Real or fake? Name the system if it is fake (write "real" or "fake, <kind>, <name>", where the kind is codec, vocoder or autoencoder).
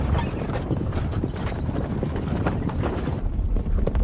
fake, vocoder, BigVGAN v2